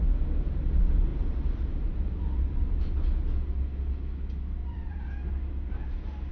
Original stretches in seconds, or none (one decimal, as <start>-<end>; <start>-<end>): 0.0-1.1; 2.9-4.6; 5.2-6.3